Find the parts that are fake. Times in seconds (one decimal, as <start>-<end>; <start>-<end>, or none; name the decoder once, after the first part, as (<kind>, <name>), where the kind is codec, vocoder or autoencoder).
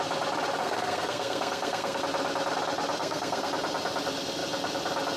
0.6-2.0 (codec, SNAC); 3.0-3.5